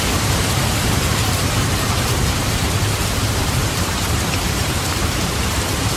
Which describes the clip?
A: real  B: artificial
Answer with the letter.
B